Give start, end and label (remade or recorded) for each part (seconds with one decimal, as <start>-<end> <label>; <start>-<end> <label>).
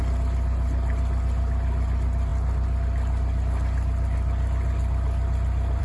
0.0-5.8 recorded